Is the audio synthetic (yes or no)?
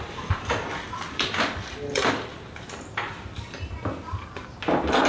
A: no